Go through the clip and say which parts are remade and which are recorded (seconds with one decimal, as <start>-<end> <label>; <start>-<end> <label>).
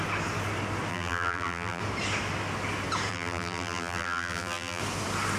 0.0-0.9 recorded; 0.9-1.8 remade; 1.8-3.1 recorded; 3.1-4.8 remade; 4.8-5.4 recorded